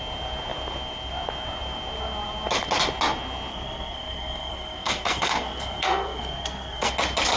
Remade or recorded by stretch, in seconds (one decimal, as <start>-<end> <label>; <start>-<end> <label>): 0.0-3.5 recorded; 3.5-6.9 remade; 6.9-7.4 recorded